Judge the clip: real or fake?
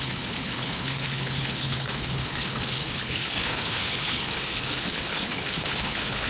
fake